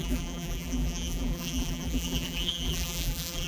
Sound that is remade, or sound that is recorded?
remade